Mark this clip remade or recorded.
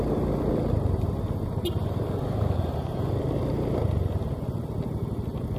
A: recorded